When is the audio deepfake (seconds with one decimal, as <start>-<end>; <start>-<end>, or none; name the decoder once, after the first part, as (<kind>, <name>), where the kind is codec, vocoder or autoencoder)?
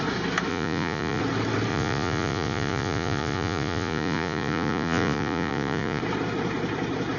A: 0.5-1.2 (vocoder, Vocos); 1.7-6.0